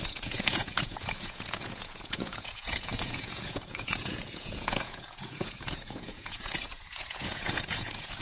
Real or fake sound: fake